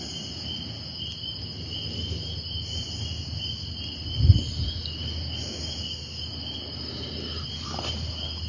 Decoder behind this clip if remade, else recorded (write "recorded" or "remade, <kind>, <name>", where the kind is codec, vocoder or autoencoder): recorded